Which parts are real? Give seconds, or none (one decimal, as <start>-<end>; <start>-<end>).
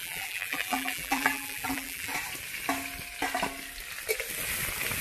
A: 2.1-5.0